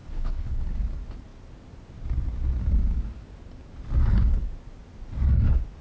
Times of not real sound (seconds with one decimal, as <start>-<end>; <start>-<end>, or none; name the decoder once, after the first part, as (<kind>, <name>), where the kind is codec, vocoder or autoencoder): 0.0-0.6 (codec, HILCodec)